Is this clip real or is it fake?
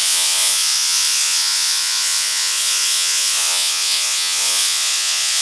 fake